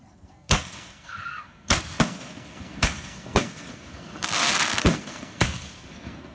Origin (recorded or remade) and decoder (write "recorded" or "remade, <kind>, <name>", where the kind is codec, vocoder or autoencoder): remade, codec, SNAC